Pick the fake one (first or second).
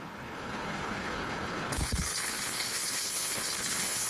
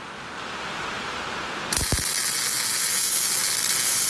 first